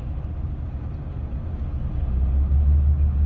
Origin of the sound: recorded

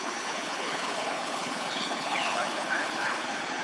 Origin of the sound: remade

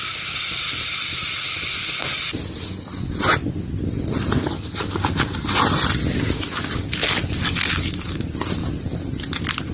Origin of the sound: recorded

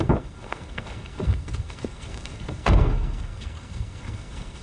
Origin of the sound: remade